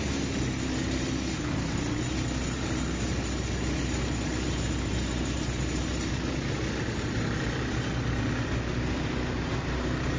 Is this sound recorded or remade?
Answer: recorded